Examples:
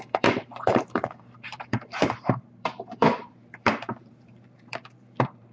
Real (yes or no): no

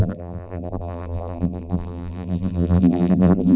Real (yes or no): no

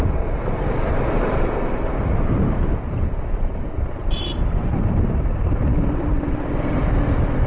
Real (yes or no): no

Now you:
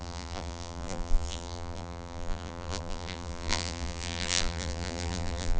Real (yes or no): no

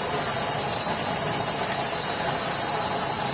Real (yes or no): yes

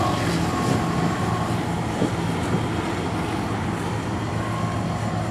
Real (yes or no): yes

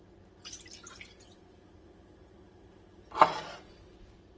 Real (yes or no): yes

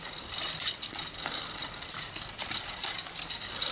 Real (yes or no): no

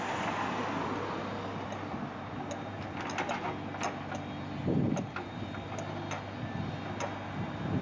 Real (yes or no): yes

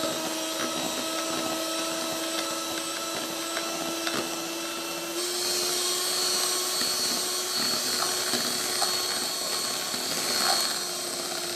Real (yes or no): yes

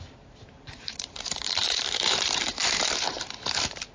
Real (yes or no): no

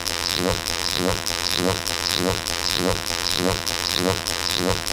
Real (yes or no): no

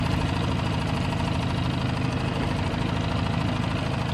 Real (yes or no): yes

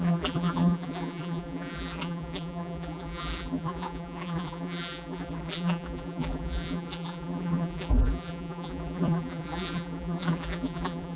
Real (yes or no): no